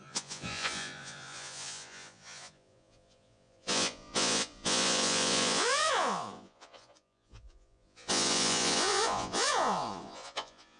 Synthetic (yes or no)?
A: yes